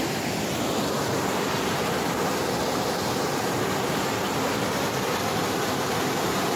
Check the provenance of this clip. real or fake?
real